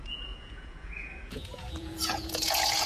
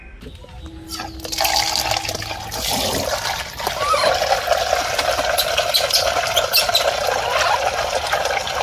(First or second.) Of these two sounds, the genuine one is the second